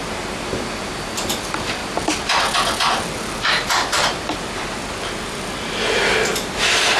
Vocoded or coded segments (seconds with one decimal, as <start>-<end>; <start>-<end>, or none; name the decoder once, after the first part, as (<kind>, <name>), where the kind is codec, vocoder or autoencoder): none